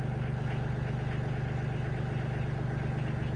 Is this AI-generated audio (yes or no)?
no